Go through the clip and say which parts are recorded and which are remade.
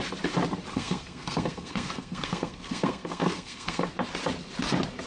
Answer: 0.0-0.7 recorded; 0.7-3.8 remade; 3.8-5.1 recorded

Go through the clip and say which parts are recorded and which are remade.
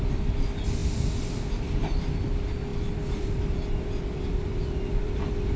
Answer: 0.0-0.8 remade; 0.8-1.5 recorded; 1.5-5.6 remade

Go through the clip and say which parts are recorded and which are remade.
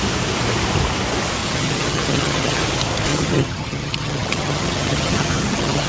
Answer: 0.0-1.4 recorded; 1.4-2.6 remade; 2.6-3.1 recorded; 3.1-5.9 remade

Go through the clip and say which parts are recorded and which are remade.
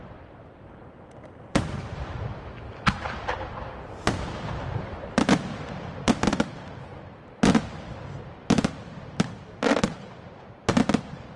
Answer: 0.0-6.3 remade; 6.3-8.7 recorded; 8.7-11.4 remade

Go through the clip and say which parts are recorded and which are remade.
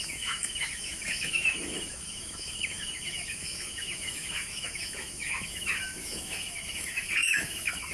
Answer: 0.0-7.9 remade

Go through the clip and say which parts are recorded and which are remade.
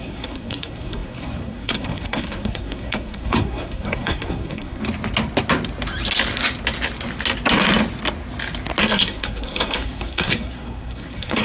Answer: 0.0-4.8 remade; 4.8-8.8 recorded; 8.8-11.4 remade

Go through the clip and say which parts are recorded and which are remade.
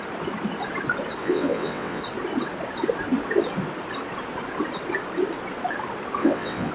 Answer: 0.0-1.2 recorded; 1.2-2.0 remade; 2.0-6.2 recorded; 6.2-6.7 remade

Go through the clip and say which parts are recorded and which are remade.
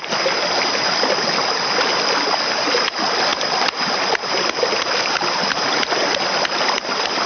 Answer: 0.0-7.3 recorded